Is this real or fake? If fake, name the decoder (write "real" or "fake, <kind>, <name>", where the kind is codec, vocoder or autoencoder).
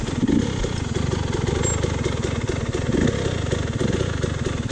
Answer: real